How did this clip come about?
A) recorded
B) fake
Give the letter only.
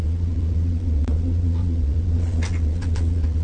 B